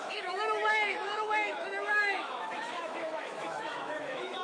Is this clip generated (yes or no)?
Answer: yes